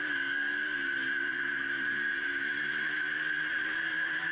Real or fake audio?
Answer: real